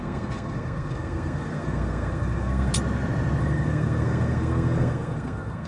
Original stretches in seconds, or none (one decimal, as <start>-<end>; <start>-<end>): 2.7-3.4